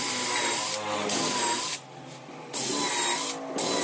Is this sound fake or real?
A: real